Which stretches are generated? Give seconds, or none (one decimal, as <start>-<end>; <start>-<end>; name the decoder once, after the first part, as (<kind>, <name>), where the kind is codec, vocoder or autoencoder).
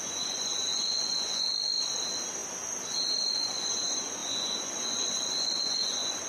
0.0-1.5 (vocoder, Vocos); 3.2-6.3